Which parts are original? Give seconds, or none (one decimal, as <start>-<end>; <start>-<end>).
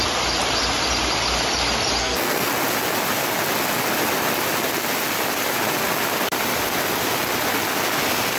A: 0.0-2.0; 2.5-8.4